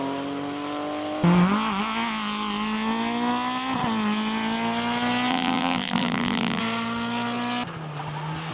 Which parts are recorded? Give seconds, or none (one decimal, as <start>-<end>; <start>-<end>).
0.0-5.3; 6.6-8.5